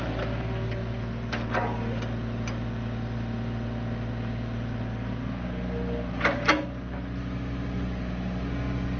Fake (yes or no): no